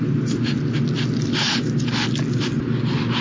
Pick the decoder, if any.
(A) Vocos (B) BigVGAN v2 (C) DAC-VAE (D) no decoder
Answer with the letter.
D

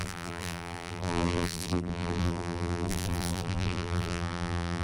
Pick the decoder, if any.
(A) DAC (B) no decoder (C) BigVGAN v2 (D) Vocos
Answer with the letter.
C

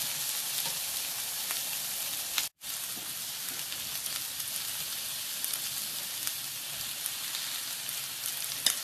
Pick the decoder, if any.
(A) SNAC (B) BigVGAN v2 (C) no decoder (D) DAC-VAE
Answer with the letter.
C